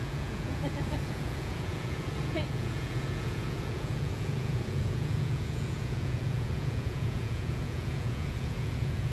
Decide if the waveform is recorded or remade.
remade